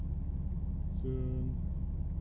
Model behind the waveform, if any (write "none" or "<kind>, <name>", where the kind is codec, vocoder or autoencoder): none